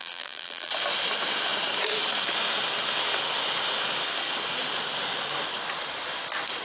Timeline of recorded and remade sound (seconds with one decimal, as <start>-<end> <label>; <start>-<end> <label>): 0.0-0.7 remade; 0.7-6.6 recorded